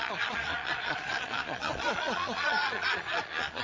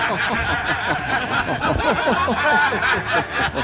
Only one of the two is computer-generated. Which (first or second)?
first